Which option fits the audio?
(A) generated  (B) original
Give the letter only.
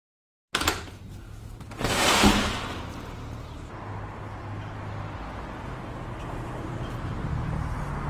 B